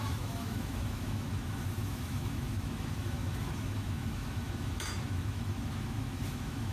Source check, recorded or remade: remade